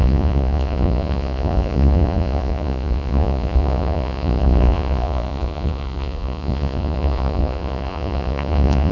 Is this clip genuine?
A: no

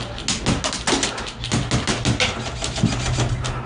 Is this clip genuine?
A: yes